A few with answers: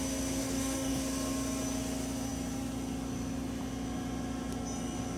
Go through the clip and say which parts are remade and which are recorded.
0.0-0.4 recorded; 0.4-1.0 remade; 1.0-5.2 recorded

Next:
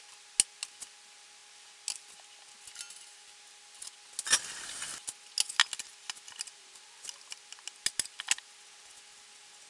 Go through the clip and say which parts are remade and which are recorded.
0.0-9.7 recorded

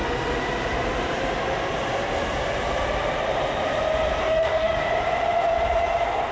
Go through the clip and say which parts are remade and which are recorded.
0.0-4.2 recorded; 4.2-4.8 remade; 4.8-6.3 recorded